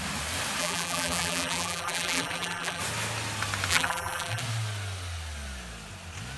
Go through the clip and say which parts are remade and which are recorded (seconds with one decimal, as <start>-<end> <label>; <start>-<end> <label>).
0.0-0.6 recorded; 0.6-2.8 remade; 2.8-3.7 recorded; 3.7-4.4 remade; 4.4-6.4 recorded